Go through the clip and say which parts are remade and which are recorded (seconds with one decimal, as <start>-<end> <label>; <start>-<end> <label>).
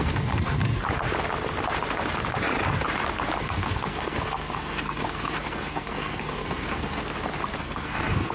0.0-0.8 remade; 0.8-3.4 recorded; 3.4-7.0 remade; 7.0-7.6 recorded; 7.6-8.3 remade